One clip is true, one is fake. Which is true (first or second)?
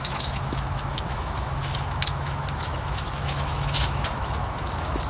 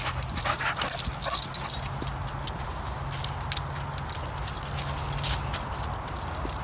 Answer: second